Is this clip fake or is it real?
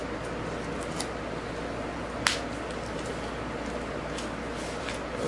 real